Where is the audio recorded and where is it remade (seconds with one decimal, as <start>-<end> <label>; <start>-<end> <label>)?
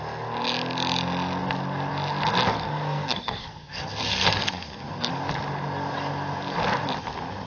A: 0.0-2.5 recorded; 2.5-5.1 remade; 5.1-7.5 recorded